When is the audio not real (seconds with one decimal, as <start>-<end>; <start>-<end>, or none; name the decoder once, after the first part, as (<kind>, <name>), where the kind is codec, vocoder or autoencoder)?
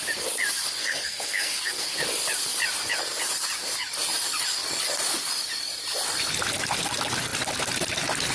0.8-1.9 (codec, SNAC)